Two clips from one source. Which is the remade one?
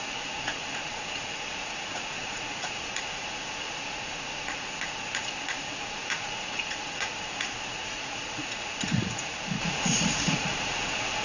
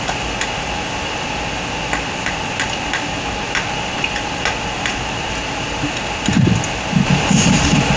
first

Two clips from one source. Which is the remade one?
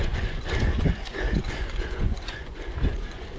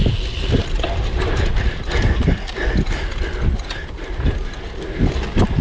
first